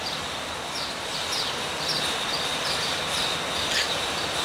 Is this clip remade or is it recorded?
recorded